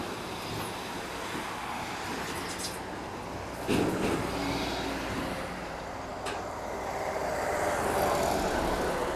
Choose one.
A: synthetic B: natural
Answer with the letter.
B